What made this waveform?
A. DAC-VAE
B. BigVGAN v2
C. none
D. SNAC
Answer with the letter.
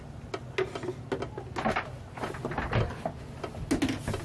C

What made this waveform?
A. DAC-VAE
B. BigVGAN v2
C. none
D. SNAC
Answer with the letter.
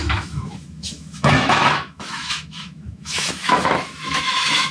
A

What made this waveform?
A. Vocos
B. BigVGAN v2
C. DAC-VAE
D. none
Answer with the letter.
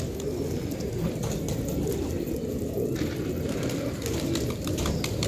D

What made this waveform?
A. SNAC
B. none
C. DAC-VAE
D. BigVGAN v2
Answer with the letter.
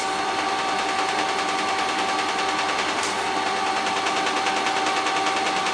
B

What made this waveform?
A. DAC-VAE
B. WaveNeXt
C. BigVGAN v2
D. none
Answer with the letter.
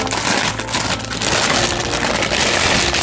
D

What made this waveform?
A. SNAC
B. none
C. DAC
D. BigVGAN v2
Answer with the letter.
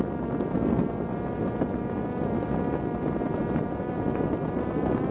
B